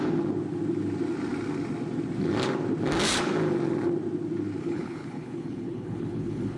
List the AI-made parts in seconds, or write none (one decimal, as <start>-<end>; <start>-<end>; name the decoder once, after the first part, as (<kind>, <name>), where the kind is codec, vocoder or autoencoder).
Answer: 4.6-6.6 (codec, HILCodec)